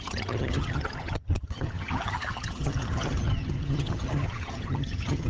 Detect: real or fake fake